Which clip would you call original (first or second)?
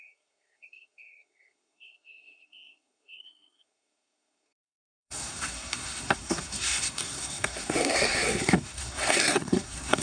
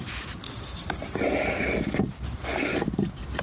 second